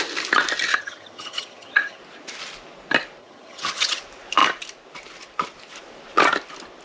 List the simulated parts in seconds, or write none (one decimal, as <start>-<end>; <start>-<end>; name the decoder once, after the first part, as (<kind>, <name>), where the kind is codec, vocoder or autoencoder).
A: 0.7-2.0 (vocoder, HiFi-GAN); 3.2-4.0